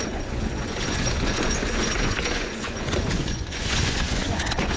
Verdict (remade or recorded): remade